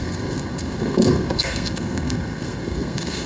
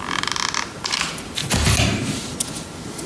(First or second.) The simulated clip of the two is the first